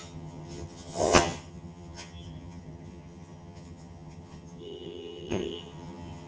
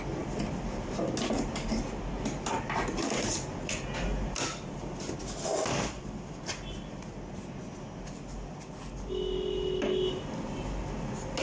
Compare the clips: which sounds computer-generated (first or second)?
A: first